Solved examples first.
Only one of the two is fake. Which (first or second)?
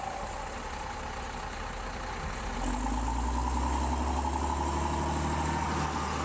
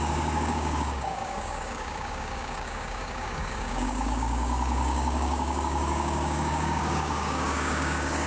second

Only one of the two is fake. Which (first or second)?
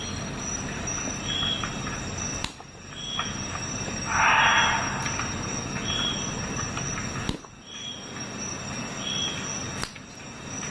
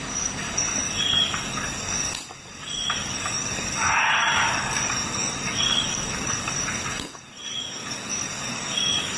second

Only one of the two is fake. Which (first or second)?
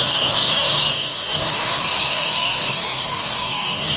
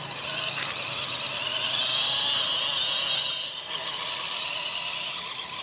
first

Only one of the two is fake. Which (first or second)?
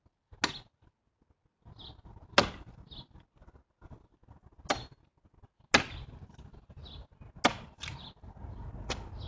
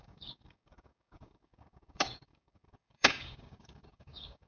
second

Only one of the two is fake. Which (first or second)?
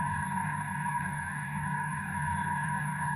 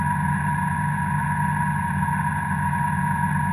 first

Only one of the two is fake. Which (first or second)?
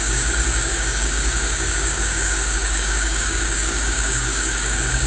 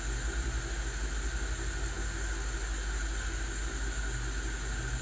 first